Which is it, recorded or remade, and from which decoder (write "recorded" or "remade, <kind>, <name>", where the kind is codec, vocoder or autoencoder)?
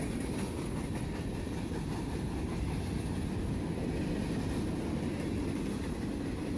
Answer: recorded